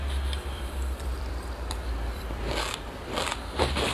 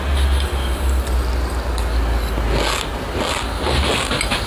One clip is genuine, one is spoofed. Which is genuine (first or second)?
second